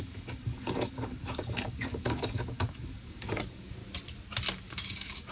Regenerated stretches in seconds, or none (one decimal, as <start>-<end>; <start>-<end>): 0.0-3.8; 4.6-5.3

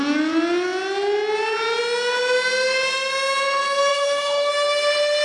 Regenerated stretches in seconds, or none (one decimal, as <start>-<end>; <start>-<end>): 3.9-4.5

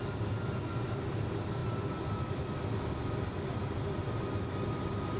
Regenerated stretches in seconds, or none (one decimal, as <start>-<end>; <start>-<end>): none

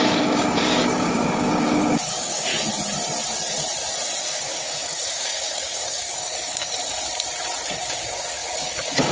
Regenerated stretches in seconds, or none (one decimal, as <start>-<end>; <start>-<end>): 0.0-2.5; 4.2-6.8; 7.7-9.1